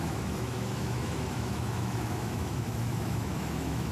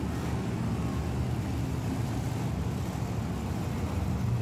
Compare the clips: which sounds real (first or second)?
second